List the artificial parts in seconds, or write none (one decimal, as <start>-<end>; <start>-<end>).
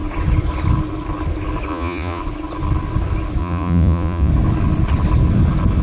1.7-2.2; 3.4-4.3